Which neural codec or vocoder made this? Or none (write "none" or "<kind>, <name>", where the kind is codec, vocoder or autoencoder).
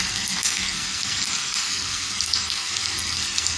codec, SNAC